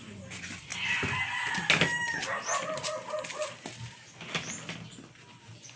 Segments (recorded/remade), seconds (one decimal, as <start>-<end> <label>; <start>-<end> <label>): 0.0-5.8 recorded